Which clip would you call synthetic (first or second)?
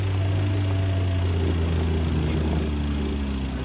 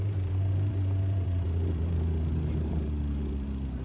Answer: second